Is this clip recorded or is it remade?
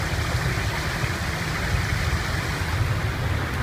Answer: recorded